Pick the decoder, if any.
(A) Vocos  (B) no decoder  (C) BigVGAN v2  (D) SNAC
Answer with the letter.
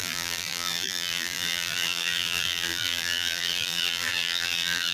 C